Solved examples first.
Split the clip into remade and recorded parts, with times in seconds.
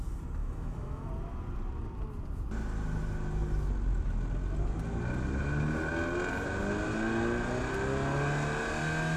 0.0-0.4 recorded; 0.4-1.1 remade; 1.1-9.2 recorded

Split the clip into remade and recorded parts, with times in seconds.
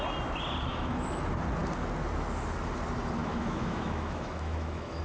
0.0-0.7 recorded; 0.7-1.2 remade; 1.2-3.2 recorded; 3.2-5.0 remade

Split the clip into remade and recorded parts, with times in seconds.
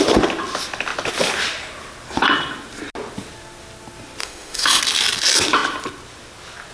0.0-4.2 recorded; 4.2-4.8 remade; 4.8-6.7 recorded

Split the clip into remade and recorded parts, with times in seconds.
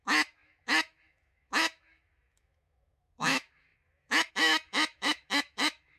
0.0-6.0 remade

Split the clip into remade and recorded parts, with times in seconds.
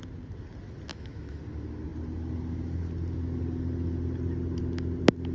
0.0-0.9 recorded; 0.9-1.4 remade; 1.4-5.3 recorded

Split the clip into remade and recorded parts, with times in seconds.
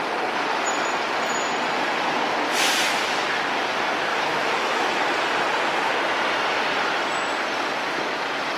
0.0-4.1 recorded; 4.1-5.0 remade; 5.0-8.6 recorded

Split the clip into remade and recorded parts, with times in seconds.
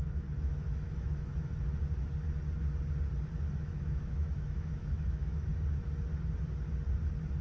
0.0-1.3 remade; 1.3-3.6 recorded; 3.6-5.5 remade; 5.5-7.4 recorded